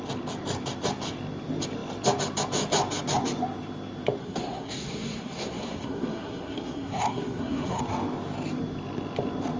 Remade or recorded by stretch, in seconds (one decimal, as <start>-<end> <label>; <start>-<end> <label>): 0.0-4.2 recorded; 4.2-7.8 remade; 7.8-9.6 recorded